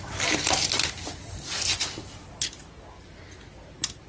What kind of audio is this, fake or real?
real